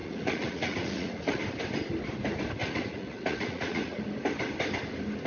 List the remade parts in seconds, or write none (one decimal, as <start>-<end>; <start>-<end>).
0.0-1.4; 2.6-4.0